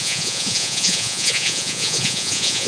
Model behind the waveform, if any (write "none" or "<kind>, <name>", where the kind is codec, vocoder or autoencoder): vocoder, Vocos